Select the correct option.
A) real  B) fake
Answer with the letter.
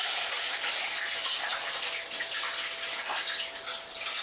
A